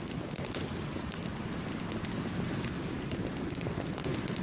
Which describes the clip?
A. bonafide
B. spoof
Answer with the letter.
A